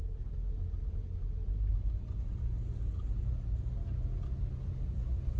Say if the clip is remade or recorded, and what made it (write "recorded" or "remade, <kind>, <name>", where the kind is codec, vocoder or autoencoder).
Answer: recorded